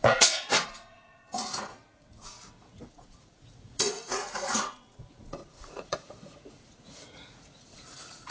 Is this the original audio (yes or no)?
no